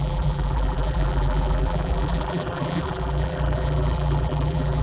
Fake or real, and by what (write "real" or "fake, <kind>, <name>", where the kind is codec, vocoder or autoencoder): fake, vocoder, BigVGAN v2